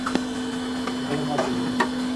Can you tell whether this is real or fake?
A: real